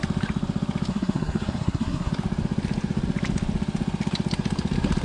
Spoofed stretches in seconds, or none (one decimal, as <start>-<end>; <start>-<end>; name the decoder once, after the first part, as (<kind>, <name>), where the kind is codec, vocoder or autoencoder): 0.9-2.1 (codec, SNAC)